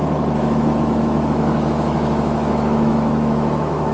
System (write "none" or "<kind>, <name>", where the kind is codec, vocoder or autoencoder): autoencoder, DAC-VAE